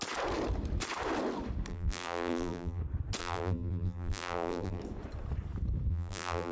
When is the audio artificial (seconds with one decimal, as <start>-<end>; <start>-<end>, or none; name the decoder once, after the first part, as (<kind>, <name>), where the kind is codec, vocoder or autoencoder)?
1.7-2.8 (vocoder, BigVGAN v2); 3.2-4.8; 5.9-6.5